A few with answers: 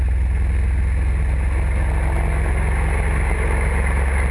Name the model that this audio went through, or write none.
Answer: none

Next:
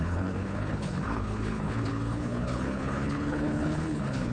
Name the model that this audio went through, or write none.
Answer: codec, HILCodec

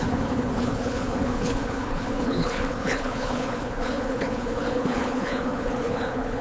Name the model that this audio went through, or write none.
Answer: codec, HILCodec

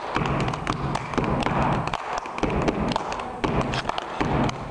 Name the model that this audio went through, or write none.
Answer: none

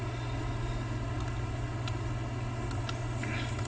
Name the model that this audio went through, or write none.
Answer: none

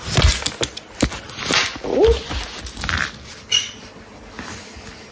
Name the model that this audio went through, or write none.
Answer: none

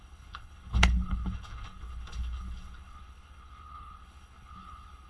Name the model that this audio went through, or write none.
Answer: codec, HILCodec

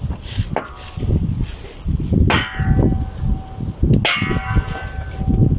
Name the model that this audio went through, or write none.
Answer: none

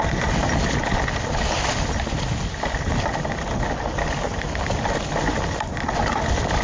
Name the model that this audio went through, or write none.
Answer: none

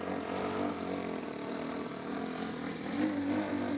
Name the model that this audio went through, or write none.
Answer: none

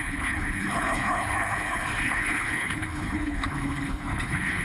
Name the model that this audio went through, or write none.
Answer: codec, HILCodec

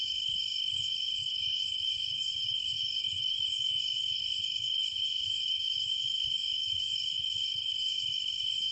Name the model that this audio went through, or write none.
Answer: codec, HILCodec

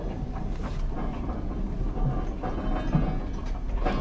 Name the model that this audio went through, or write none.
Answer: none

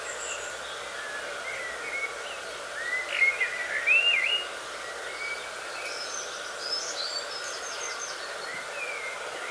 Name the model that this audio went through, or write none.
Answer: none